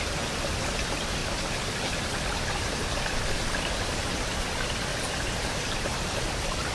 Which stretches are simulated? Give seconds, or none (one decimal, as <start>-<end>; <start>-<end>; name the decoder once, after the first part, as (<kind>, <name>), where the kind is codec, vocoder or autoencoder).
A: 1.2-3.0 (vocoder, BigVGAN v2); 4.9-5.9